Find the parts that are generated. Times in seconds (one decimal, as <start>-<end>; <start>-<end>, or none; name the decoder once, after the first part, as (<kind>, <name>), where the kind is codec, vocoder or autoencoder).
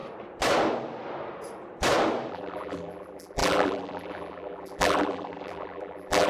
2.3-6.3 (vocoder, BigVGAN v2)